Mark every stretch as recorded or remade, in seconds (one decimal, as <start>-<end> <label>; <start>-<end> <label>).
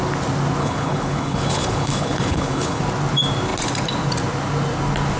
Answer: 0.0-0.6 recorded; 0.6-2.8 remade; 2.8-5.2 recorded